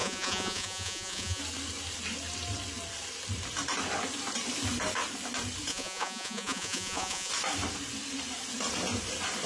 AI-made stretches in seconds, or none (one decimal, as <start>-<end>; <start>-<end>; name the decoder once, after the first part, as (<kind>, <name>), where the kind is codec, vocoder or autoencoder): 0.0-1.4 (vocoder, Vocos); 5.7-7.3